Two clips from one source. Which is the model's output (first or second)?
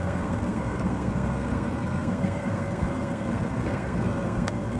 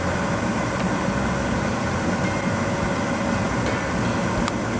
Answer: first